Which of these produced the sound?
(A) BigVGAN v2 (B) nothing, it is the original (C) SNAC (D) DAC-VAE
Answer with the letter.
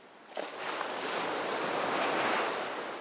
B